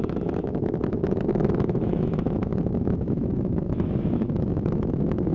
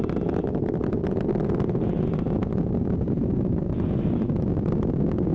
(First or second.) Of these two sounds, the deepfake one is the first